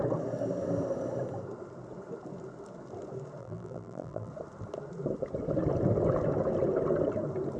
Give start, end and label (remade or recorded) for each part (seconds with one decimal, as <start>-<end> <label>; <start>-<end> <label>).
0.0-3.4 recorded; 3.4-4.3 remade; 4.3-7.6 recorded